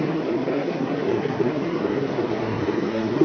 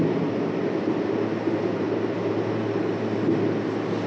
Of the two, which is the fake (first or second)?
first